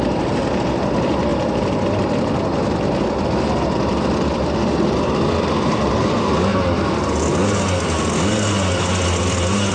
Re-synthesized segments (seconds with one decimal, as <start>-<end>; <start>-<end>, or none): 1.3-5.9

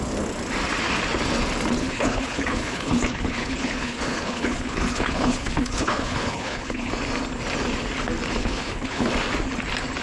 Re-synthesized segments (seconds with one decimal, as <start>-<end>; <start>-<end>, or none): 1.8-6.9; 8.4-9.1

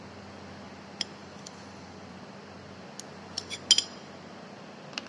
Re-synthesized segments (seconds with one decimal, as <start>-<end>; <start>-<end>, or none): 1.2-2.1

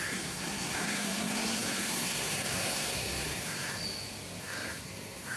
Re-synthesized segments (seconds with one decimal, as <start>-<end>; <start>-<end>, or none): 0.0-3.8; 4.4-5.4

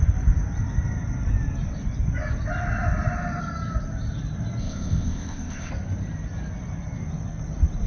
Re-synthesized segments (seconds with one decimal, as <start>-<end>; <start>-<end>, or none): 4.6-5.7

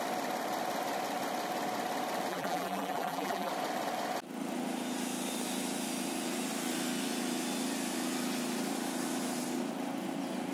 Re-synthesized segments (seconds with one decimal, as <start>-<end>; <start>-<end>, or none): 2.3-3.5

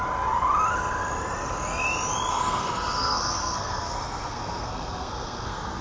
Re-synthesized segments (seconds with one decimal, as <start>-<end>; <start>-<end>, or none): 2.3-5.8

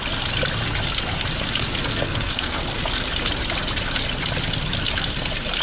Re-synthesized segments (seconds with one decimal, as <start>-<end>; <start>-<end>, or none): 1.9-2.6